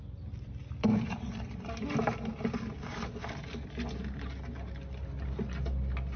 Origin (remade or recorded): recorded